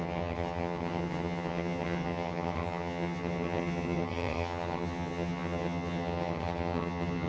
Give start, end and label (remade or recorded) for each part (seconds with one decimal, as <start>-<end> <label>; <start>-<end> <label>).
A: 0.0-7.3 remade